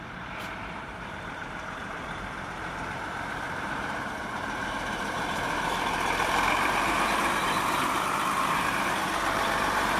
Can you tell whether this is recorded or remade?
remade